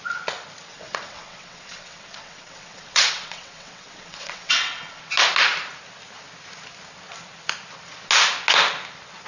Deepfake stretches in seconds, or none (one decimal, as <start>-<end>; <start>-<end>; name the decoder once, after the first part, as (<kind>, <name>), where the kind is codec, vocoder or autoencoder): 0.7-5.0 (vocoder, WaveNeXt)